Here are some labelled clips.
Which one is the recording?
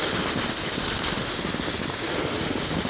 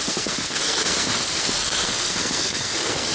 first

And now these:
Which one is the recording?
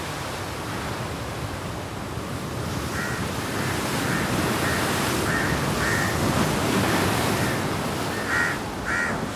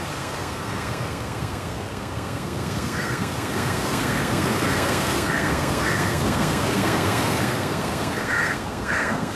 first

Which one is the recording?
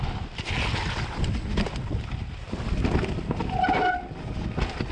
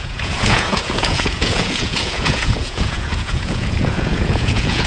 first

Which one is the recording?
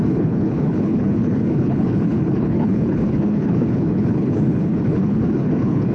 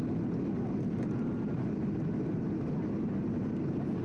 second